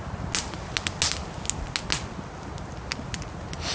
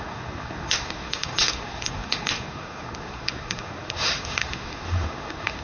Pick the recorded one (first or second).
first